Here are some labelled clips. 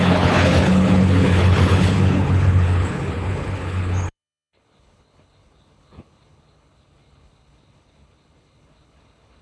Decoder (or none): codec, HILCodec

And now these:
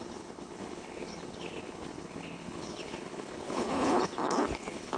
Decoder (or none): codec, HILCodec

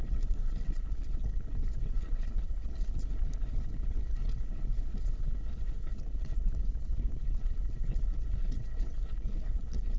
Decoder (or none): codec, HILCodec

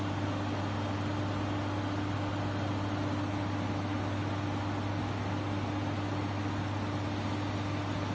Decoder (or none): none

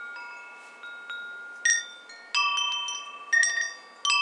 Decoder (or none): none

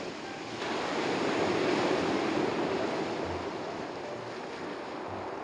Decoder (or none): none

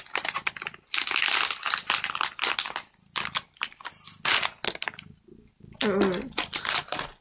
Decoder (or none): none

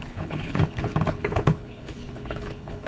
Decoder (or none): codec, HILCodec